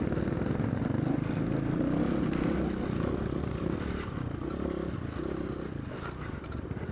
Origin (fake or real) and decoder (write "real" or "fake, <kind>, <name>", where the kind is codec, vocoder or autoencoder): real